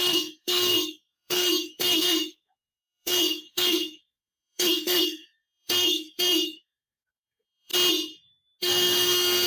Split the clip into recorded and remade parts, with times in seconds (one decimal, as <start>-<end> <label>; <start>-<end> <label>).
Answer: 0.0-7.7 remade; 7.7-8.6 recorded; 8.6-9.5 remade